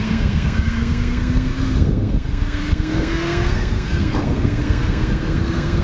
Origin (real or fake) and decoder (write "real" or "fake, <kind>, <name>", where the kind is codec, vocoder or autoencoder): fake, codec, SNAC